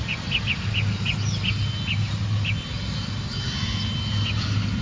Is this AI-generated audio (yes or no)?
no